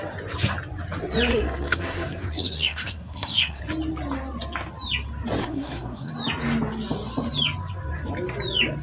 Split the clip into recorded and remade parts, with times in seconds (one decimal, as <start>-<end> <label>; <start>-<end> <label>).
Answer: 0.0-1.3 recorded; 1.3-3.6 remade; 3.6-5.4 recorded; 5.4-6.1 remade; 6.1-8.8 recorded